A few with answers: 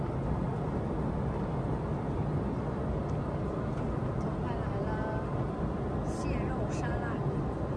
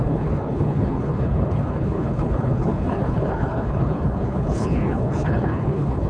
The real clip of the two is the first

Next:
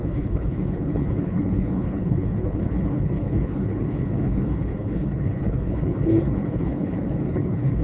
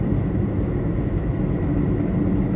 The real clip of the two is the second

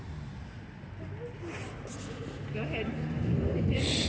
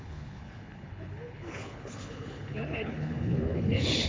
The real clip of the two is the first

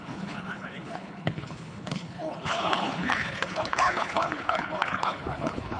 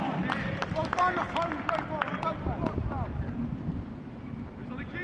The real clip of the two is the second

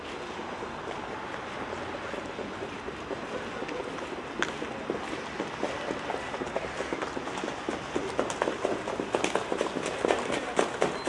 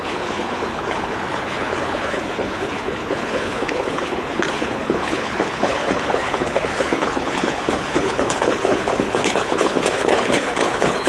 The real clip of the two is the first